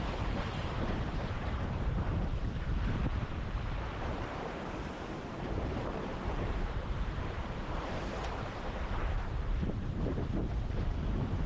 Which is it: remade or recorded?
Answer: remade